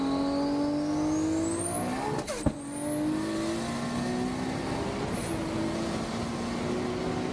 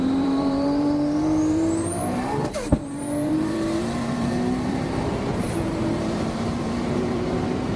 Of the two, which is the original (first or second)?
first